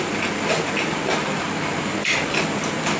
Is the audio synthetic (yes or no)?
no